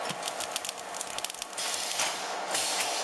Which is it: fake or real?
real